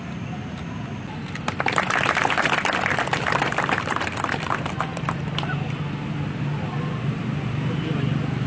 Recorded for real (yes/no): yes